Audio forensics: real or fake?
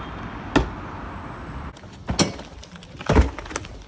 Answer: real